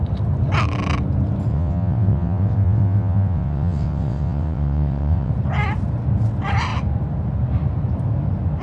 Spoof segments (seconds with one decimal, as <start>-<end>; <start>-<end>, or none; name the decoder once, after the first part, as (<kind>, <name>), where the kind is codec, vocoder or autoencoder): 1.5-5.3 (vocoder, WaveNeXt)